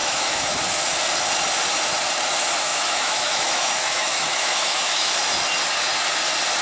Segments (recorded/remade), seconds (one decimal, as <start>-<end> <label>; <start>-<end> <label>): 0.0-0.6 remade; 0.6-2.7 recorded; 2.7-5.1 remade; 5.1-6.6 recorded